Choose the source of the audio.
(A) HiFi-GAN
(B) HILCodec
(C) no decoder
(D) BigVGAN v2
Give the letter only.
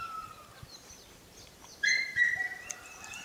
D